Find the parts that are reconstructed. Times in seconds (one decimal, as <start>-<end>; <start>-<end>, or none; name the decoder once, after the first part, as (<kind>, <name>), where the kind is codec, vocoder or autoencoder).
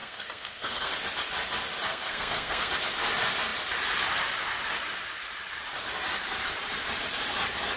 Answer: 0.0-0.9 (codec, SNAC); 1.9-2.7